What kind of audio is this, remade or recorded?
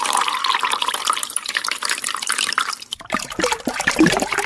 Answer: remade